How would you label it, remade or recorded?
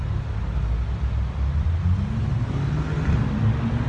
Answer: recorded